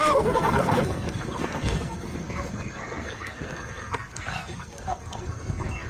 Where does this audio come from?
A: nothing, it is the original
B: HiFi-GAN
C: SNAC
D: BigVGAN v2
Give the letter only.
C